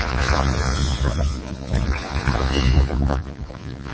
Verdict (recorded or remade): remade